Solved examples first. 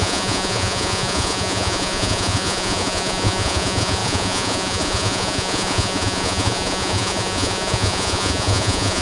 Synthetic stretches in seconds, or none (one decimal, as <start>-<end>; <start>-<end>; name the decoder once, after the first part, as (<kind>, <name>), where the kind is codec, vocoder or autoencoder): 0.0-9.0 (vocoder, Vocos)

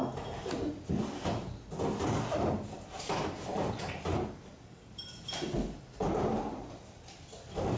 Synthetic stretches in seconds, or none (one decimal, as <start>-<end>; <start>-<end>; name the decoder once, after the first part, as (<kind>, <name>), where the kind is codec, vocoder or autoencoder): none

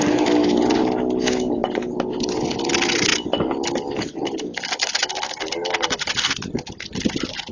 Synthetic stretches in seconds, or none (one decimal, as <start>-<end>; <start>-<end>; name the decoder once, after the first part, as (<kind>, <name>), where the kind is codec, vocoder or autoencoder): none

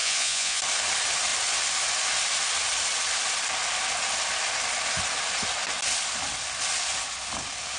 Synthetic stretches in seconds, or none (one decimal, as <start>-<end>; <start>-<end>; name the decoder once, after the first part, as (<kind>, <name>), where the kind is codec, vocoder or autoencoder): 0.0-0.6 (vocoder, Vocos)

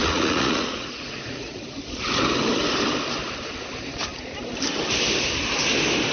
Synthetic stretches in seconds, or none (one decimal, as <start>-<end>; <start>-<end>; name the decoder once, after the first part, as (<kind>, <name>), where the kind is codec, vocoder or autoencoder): 0.0-1.6 (vocoder, Vocos)

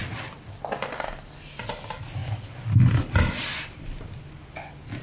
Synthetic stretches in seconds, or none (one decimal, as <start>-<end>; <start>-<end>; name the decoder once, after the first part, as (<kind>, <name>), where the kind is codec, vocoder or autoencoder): none

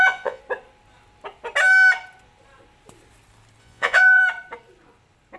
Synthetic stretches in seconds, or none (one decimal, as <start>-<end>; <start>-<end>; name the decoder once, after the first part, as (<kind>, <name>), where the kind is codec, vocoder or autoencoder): 0.0-0.4 (vocoder, Vocos); 3.6-4.2